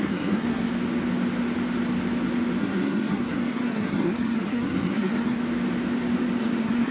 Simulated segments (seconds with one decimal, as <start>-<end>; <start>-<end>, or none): 0.0-0.7; 2.6-5.4; 6.4-6.9